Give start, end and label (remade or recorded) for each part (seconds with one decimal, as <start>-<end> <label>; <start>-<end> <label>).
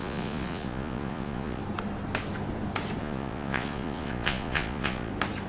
0.0-1.6 remade; 1.6-3.0 recorded; 3.0-5.1 remade; 5.1-5.5 recorded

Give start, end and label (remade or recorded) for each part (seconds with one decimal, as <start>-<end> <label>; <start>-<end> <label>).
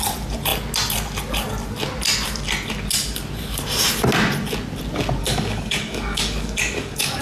0.0-5.2 recorded; 5.2-7.2 remade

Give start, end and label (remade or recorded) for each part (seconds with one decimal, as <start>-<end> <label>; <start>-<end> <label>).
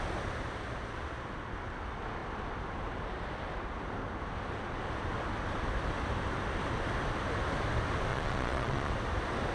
0.0-8.1 recorded; 8.1-8.9 remade; 8.9-9.5 recorded